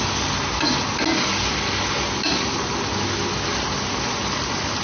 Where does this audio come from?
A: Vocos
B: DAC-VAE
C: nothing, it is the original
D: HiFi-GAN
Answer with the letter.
C